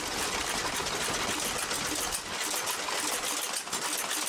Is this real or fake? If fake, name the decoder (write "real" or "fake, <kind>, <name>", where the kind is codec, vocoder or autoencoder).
real